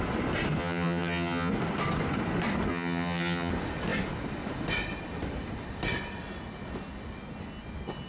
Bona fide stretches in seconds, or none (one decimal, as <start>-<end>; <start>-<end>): 0.0-0.6; 1.5-2.7; 3.5-8.1